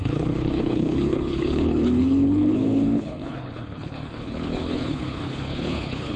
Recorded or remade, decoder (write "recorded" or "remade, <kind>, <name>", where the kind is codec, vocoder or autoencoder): remade, codec, HILCodec